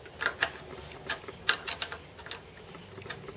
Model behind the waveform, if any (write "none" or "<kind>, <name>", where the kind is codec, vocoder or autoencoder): none